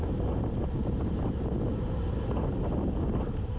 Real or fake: real